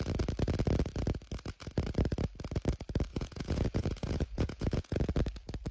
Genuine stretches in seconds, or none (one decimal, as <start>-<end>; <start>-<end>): 0.0-3.1; 5.0-5.7